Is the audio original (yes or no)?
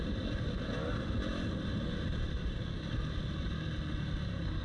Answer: yes